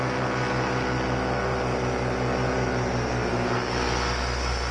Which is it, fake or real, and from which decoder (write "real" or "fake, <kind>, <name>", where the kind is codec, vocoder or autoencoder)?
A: real